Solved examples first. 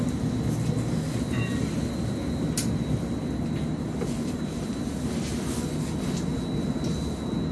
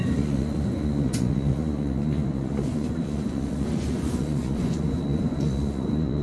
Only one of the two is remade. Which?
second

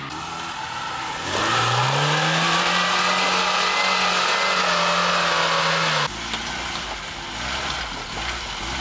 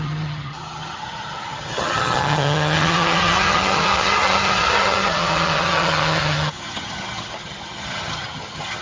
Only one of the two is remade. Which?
second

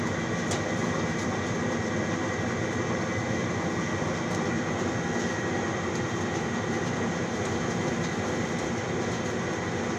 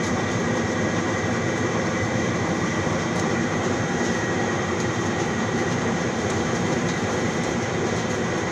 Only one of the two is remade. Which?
second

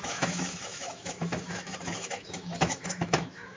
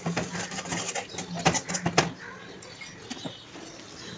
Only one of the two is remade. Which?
first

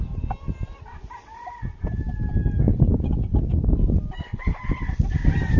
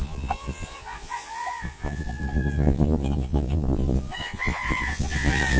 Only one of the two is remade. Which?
second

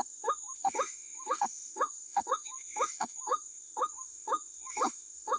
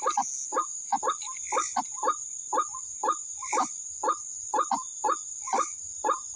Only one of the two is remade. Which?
first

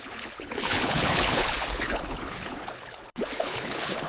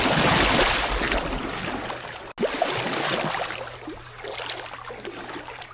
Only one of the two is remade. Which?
first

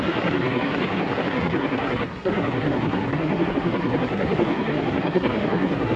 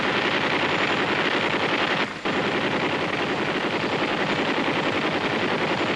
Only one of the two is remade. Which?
first